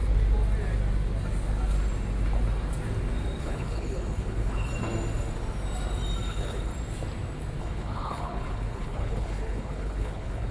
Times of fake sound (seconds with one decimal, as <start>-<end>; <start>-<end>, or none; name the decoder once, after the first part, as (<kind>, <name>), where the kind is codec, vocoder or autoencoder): 3.4-4.7 (codec, HILCodec); 6.3-6.7; 7.6-10.5